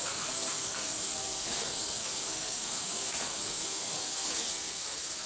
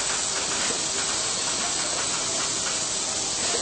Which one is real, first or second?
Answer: second